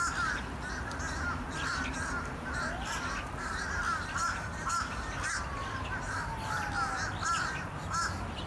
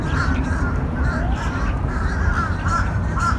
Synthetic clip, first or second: second